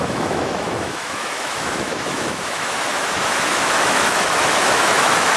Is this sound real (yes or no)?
no